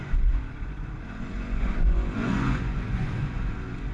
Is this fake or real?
fake